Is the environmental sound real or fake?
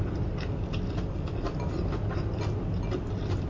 real